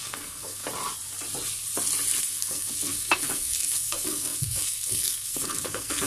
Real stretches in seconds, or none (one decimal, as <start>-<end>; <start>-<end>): 0.6-2.2